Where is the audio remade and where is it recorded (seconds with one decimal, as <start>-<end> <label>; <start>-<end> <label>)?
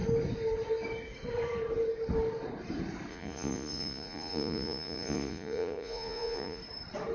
0.0-3.1 recorded; 3.1-6.6 remade; 6.6-7.1 recorded